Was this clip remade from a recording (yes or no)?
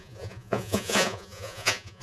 yes